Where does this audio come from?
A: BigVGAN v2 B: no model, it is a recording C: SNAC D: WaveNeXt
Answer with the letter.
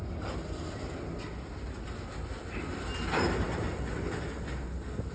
B